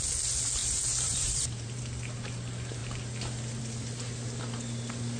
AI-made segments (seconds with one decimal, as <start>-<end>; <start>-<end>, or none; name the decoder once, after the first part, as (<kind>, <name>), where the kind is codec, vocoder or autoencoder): 0.6-1.8 (vocoder, BigVGAN v2)